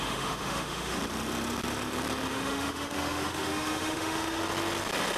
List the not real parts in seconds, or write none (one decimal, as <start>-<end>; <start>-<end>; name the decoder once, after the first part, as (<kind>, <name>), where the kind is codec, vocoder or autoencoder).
0.0-1.0 (autoencoder, DAC-VAE); 2.3-4.4